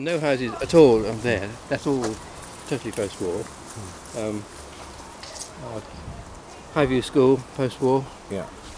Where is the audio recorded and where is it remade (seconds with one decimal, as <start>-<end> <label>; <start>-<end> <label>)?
0.0-8.8 recorded